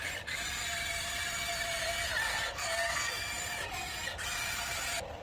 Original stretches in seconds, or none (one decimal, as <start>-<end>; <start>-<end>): 0.0-2.3; 3.2-5.2